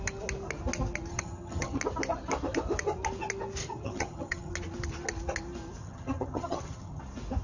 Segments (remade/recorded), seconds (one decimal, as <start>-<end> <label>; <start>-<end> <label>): 0.0-1.1 recorded; 1.1-1.8 remade; 1.8-3.6 recorded; 3.6-4.5 remade; 4.5-5.8 recorded; 5.8-7.0 remade; 7.0-7.4 recorded